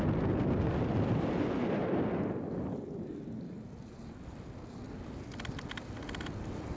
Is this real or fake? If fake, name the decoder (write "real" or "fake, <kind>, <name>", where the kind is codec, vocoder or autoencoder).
real